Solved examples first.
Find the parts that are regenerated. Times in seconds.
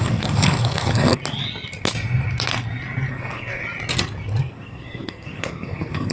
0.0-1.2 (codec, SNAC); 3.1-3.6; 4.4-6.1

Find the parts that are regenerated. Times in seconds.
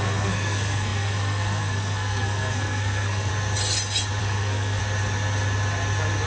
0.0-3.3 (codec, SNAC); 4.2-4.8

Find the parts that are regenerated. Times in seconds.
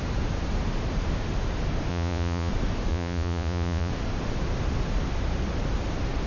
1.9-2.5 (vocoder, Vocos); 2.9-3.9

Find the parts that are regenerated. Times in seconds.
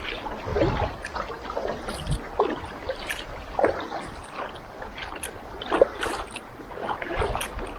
0.0-0.5 (vocoder, BigVGAN v2); 5.2-7.8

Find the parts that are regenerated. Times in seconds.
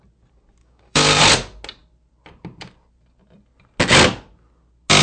0.6-1.2 (codec, DAC)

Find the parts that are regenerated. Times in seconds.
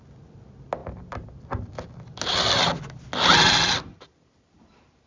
none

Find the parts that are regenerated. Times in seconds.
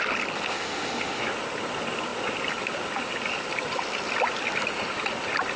0.5-1.2 (autoencoder, DAC-VAE)